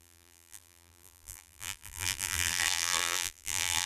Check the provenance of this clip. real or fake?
fake